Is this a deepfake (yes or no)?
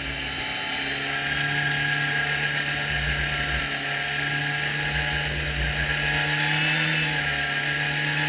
no